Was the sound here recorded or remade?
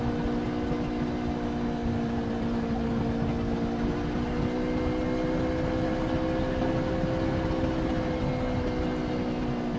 recorded